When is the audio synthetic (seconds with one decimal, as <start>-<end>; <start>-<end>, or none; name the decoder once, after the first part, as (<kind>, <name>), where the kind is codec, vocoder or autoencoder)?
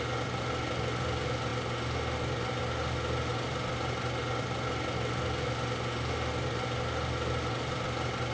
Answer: none